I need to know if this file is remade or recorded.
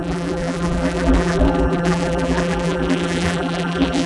remade